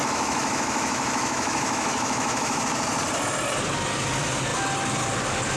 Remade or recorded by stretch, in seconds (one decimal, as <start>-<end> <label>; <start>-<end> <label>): 0.0-2.6 remade; 2.6-5.6 recorded

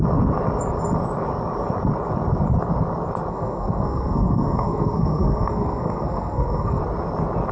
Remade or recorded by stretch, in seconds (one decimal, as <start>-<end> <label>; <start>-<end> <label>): 0.0-3.3 recorded; 3.3-6.8 remade; 6.8-7.5 recorded

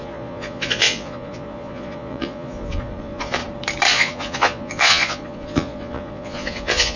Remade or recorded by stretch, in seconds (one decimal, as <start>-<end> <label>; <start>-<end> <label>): 0.0-3.4 remade; 3.4-3.9 recorded; 3.9-7.0 remade

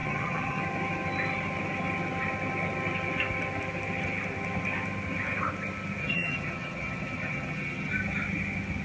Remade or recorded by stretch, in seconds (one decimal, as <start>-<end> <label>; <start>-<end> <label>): 0.0-0.6 remade; 0.6-6.0 recorded; 6.0-7.9 remade; 7.9-8.8 recorded